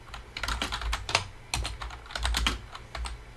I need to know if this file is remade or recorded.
recorded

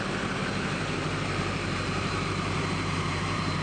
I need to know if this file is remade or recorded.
remade